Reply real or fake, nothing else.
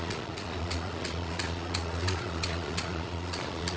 fake